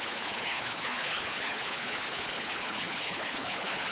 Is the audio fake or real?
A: fake